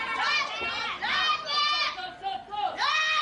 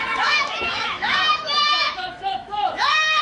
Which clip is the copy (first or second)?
second